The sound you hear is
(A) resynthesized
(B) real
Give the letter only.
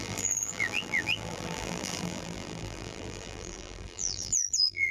A